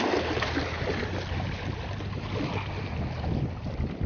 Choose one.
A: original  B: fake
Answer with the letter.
A